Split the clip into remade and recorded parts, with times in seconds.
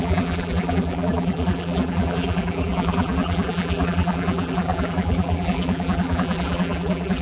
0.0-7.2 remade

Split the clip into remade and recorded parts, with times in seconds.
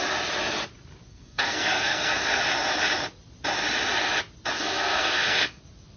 0.0-1.1 recorded; 1.1-2.4 remade; 2.4-4.5 recorded; 4.5-5.6 remade; 5.6-6.0 recorded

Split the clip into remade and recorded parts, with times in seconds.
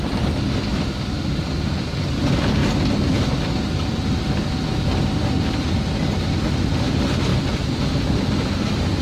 0.0-9.0 recorded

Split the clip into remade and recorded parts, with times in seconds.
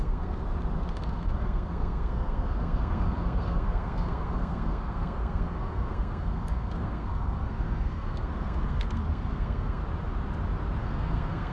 0.0-0.4 remade; 0.4-0.9 recorded; 0.9-9.8 remade; 9.8-10.8 recorded; 10.8-11.5 remade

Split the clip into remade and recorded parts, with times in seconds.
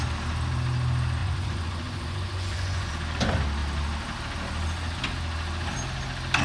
0.0-1.2 recorded; 1.2-2.9 remade; 2.9-6.4 recorded